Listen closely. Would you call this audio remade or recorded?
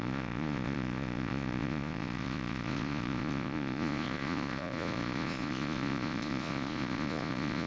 remade